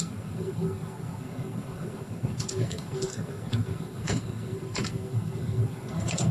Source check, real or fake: fake